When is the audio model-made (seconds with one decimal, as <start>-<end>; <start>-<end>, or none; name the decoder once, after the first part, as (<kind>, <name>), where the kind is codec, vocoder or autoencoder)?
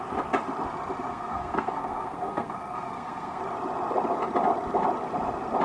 1.1-3.4 (codec, SNAC)